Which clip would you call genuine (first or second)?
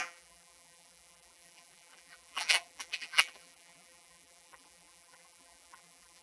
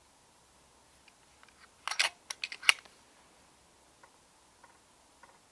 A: second